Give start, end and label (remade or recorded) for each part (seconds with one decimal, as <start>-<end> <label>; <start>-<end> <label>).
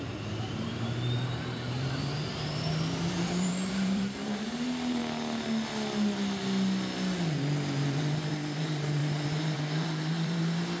0.0-5.0 remade; 5.0-8.3 recorded; 8.3-10.8 remade